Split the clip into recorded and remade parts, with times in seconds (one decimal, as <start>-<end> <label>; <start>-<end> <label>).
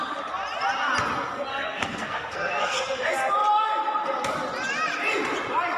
0.0-1.5 recorded; 1.5-2.8 remade; 2.8-5.8 recorded